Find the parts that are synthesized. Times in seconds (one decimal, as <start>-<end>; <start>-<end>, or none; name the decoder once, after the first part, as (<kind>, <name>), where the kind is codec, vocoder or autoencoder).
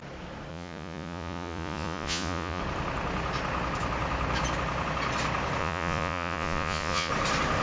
0.5-2.6 (vocoder, Vocos); 5.6-7.1